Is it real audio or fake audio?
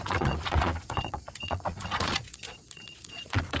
fake